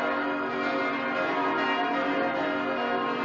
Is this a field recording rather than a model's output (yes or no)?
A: yes